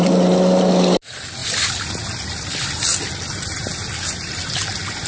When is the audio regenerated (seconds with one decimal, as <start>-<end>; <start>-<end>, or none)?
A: none